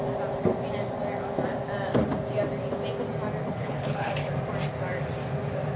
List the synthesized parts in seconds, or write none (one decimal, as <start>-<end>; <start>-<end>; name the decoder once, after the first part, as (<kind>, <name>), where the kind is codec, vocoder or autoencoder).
3.4-4.1 (codec, HILCodec)